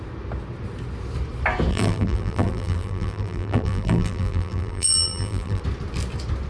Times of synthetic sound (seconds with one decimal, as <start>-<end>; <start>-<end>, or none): 1.7-5.6